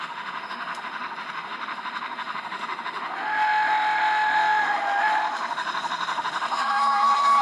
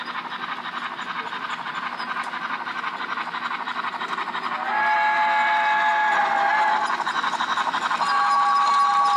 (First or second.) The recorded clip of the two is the second